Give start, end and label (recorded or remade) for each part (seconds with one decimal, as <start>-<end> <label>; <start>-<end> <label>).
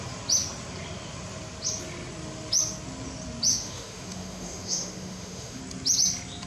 0.0-3.5 recorded; 3.5-5.6 remade; 5.6-6.5 recorded